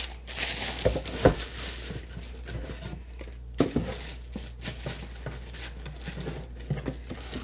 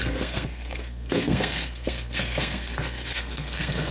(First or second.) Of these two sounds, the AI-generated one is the second